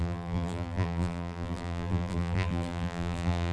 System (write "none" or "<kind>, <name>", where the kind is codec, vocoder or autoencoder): vocoder, BigVGAN v2